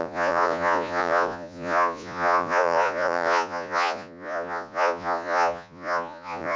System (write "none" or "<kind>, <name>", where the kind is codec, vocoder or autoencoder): vocoder, Vocos